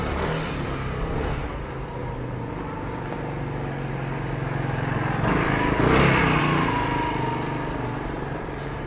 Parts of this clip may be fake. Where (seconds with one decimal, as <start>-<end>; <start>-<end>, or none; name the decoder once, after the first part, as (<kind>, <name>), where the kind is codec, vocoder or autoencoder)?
none